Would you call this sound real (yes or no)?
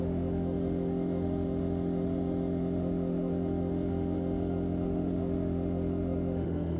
no